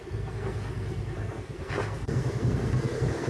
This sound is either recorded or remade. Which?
remade